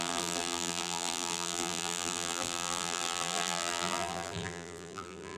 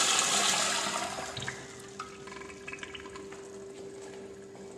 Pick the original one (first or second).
second